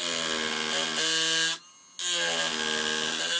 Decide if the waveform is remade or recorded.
recorded